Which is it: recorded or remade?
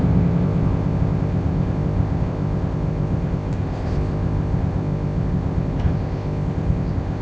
remade